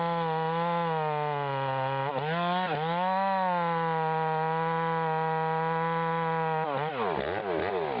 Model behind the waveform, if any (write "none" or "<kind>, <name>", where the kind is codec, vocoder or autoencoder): none